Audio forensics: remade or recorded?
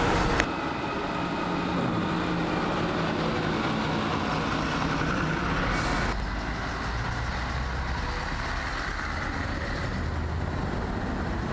recorded